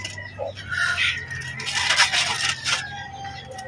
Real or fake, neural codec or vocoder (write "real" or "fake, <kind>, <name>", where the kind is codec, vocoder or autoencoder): real